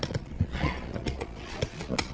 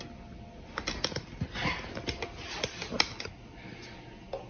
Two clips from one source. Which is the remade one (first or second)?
first